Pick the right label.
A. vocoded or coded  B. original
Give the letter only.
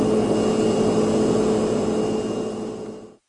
B